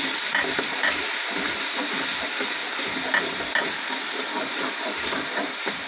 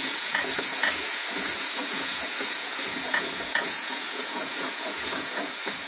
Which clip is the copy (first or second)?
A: second